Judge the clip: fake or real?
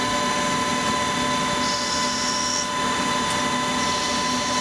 real